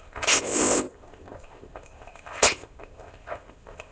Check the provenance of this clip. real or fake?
fake